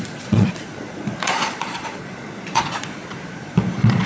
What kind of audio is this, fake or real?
fake